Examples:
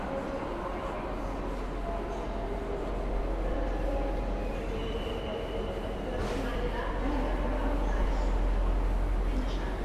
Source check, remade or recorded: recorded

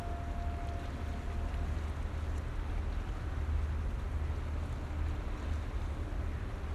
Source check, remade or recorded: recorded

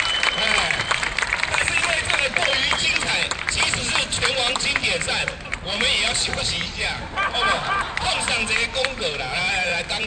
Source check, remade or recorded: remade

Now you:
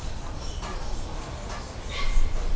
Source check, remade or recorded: recorded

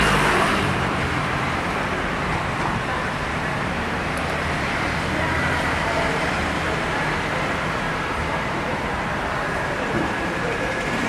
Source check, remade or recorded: remade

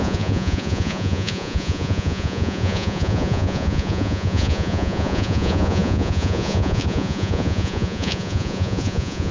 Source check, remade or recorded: remade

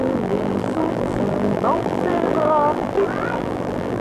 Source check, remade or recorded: remade